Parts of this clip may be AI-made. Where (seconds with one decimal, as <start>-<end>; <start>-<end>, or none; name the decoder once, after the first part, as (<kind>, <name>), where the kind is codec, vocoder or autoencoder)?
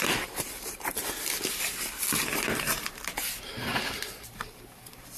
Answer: 0.0-5.2 (vocoder, BigVGAN v2)